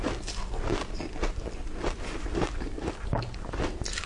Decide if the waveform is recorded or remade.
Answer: recorded